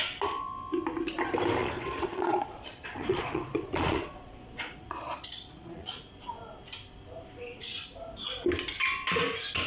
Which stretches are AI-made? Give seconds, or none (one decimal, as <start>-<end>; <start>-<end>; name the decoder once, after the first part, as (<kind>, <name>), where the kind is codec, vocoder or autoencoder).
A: 1.6-6.0 (vocoder, Vocos)